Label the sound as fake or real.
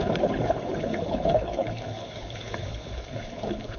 fake